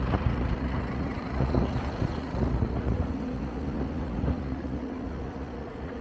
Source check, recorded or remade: remade